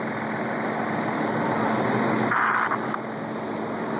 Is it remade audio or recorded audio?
recorded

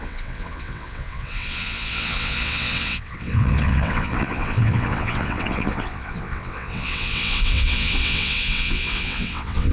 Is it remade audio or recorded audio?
remade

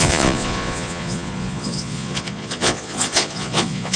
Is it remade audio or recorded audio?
remade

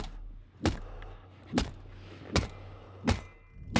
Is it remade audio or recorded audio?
recorded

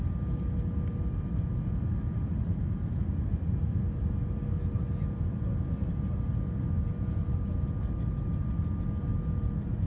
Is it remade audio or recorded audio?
recorded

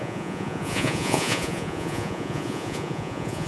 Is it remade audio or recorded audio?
remade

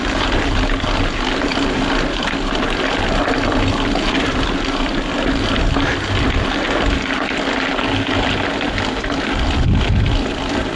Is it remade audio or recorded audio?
recorded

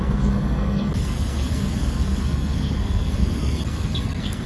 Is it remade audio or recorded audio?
remade